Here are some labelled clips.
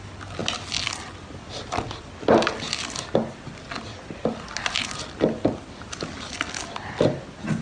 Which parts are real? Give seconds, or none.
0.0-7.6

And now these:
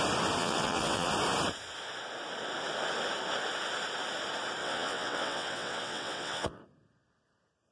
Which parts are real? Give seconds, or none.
0.0-0.4; 1.1-4.6; 6.6-7.7

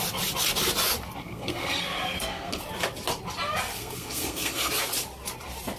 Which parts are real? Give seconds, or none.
0.0-1.2; 2.6-3.8; 4.7-5.8

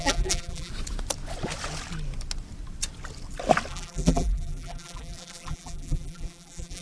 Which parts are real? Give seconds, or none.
0.7-3.7

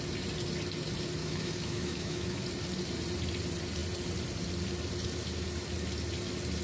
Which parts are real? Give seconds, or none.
0.0-1.2; 2.4-6.6